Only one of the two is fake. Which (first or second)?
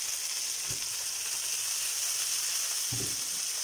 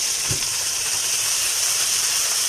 second